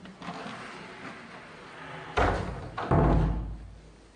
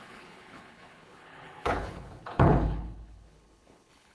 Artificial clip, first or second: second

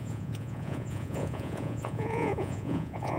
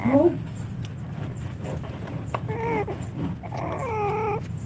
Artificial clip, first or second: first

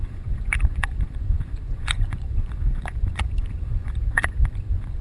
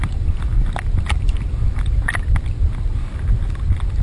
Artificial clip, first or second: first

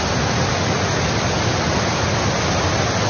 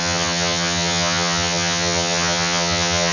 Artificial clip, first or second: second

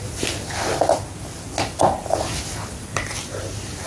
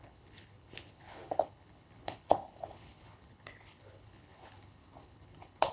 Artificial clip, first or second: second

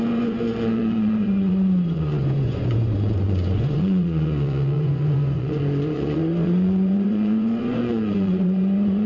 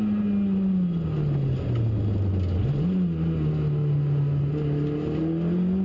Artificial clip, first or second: first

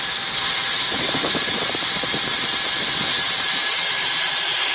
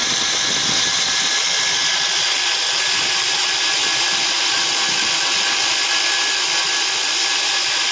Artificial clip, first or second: first